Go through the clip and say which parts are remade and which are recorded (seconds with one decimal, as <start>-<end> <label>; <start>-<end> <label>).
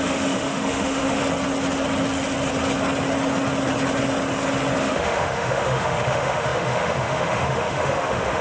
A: 0.0-1.2 remade; 1.2-4.8 recorded; 4.8-8.4 remade